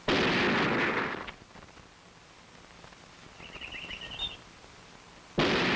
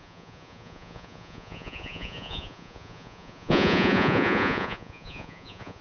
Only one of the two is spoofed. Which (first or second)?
second